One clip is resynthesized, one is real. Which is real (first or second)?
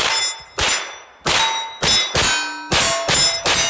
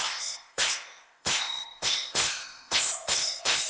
first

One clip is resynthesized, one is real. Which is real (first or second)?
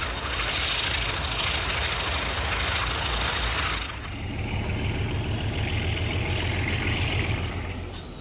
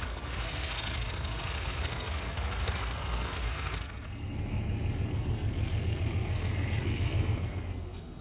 first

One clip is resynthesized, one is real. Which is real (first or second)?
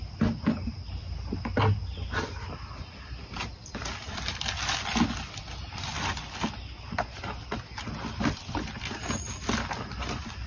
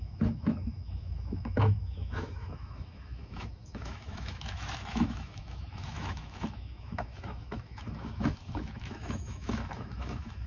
first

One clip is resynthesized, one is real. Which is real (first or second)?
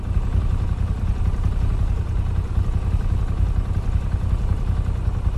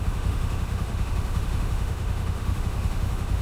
first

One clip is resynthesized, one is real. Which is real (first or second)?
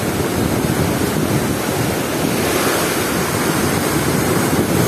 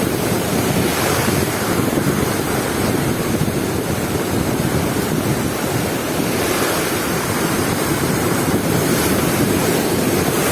first